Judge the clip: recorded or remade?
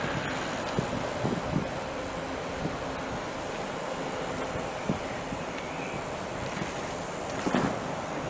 recorded